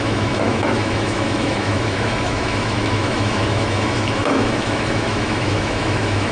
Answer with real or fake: fake